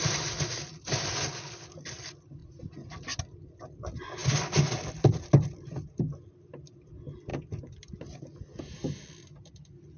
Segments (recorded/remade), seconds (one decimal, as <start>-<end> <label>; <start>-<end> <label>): 0.0-10.0 recorded